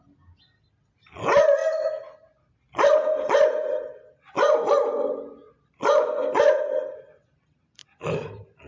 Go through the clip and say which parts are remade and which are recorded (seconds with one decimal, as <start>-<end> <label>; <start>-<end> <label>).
0.0-8.7 recorded